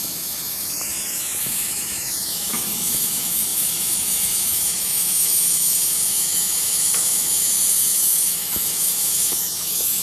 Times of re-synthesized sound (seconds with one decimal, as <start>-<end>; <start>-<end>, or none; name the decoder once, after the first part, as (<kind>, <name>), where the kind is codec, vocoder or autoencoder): 0.0-10.0 (autoencoder, DAC-VAE)